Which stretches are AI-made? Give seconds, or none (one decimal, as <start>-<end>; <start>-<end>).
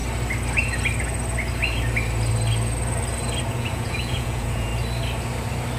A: 3.5-4.7